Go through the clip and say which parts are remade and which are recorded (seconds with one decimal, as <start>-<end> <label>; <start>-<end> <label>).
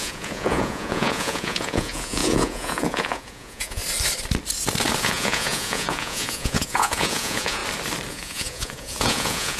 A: 0.0-3.8 remade; 3.8-5.0 recorded; 5.0-7.6 remade; 7.6-8.1 recorded; 8.1-9.6 remade